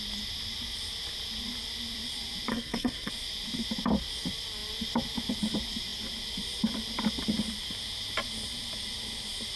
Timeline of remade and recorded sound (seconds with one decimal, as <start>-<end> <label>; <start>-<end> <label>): 0.0-2.5 recorded; 2.5-3.1 remade; 3.1-9.6 recorded